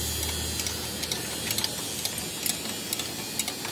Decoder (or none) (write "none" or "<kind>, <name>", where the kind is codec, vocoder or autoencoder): none